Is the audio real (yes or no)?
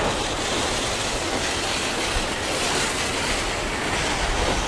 yes